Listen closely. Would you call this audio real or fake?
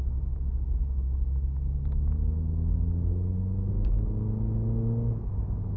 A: real